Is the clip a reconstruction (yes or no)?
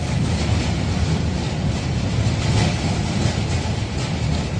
no